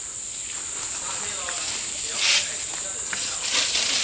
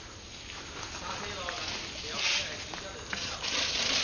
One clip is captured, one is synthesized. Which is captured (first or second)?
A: second